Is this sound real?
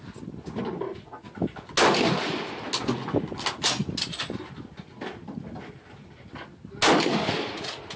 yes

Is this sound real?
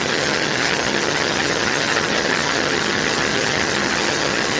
no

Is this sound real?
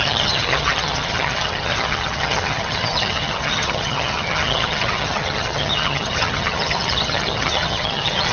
no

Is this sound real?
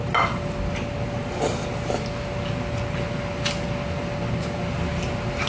yes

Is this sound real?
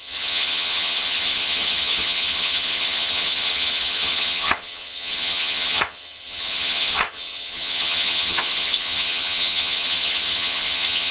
no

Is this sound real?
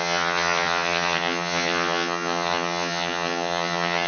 no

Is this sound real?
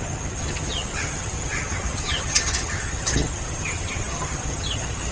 no